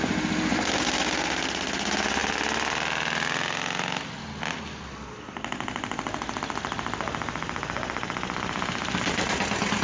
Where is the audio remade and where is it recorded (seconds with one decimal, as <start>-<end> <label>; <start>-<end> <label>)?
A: 0.0-9.8 recorded